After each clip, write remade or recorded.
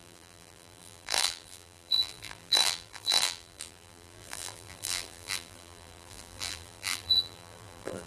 remade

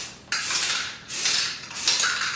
remade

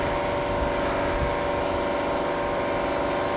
recorded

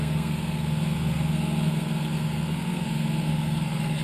remade